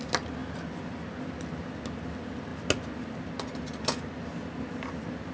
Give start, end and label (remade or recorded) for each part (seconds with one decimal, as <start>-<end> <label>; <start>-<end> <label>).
0.0-5.3 recorded